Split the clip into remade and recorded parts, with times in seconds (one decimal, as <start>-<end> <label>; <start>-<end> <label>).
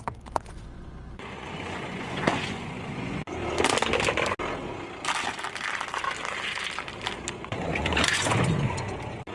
0.0-3.4 remade; 3.4-7.3 recorded; 7.3-9.3 remade